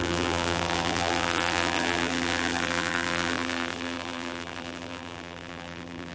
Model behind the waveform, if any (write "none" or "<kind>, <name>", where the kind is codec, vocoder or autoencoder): vocoder, BigVGAN v2